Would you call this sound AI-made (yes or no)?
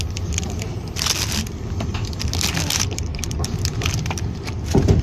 yes